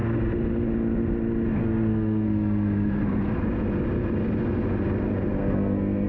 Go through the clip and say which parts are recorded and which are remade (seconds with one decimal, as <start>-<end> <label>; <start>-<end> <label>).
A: 0.0-1.6 recorded; 1.6-3.4 remade; 3.4-5.4 recorded; 5.4-6.1 remade